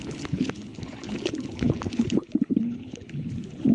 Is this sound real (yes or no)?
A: no